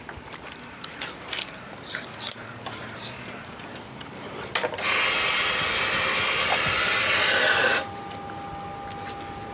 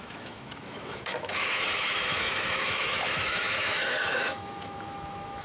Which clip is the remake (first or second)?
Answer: second